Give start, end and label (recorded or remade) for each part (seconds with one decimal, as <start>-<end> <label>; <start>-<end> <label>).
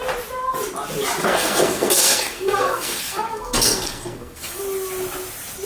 0.0-1.2 recorded; 1.2-4.6 remade; 4.6-5.7 recorded